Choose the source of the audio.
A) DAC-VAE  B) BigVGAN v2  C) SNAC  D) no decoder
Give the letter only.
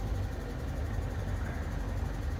D